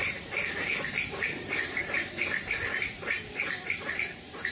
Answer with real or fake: fake